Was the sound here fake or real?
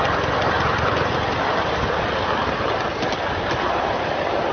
real